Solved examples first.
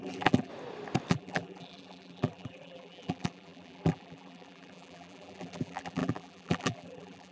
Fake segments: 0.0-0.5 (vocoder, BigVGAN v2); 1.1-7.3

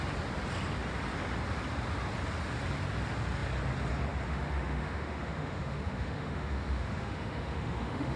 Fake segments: 4.3-8.2 (autoencoder, DAC-VAE)

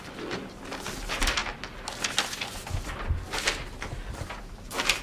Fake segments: 0.0-1.4 (vocoder, BigVGAN v2); 4.4-5.0